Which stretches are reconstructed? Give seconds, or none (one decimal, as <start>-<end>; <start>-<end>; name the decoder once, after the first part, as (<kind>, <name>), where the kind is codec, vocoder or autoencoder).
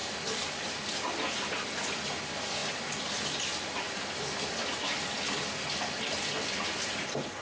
none